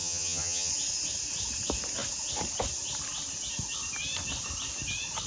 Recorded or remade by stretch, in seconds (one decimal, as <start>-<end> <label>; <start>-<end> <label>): 0.0-0.7 remade; 0.7-5.3 recorded